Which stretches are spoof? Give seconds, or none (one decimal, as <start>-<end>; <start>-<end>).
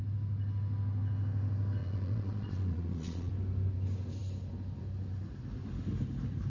1.8-3.3